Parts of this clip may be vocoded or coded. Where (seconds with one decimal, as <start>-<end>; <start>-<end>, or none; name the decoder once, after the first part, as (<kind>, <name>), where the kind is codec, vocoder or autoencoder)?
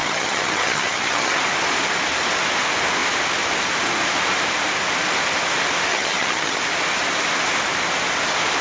0.0-1.4 (vocoder, HiFi-GAN); 5.9-6.6